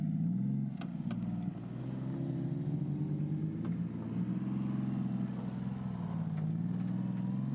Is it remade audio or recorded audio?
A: recorded